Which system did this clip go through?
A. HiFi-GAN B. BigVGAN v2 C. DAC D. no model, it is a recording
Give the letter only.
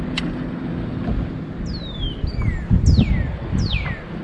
D